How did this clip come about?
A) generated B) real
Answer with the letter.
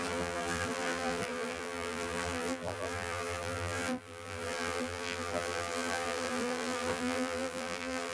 A